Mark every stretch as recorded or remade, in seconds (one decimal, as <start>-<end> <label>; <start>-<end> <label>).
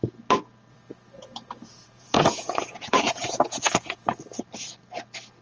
0.0-0.9 recorded; 0.9-4.1 remade; 4.1-5.4 recorded